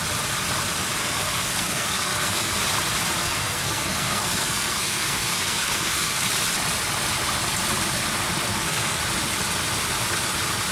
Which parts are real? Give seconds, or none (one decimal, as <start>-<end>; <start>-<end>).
0.0-1.0; 2.6-3.2; 6.2-8.5; 9.0-10.7

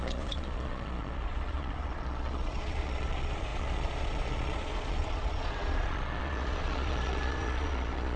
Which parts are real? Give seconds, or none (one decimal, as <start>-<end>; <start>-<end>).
none

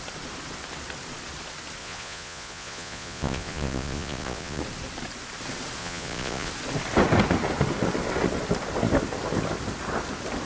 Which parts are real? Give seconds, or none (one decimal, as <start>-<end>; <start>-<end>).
0.0-1.8; 4.6-5.8; 6.5-10.5

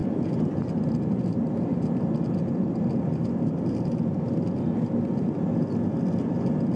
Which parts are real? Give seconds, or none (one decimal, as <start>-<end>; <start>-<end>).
4.1-6.8

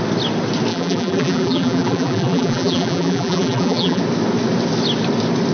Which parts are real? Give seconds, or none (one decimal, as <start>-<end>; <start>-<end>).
0.0-0.7; 4.0-5.5

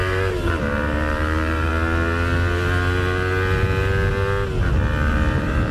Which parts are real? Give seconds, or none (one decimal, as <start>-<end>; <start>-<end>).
1.7-5.1